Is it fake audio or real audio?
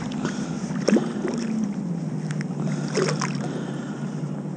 real